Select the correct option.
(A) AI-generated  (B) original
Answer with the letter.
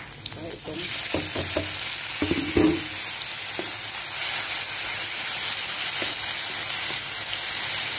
B